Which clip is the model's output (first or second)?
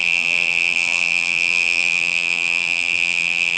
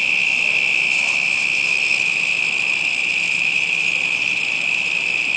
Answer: first